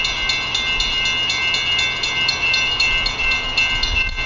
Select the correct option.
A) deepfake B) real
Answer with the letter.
B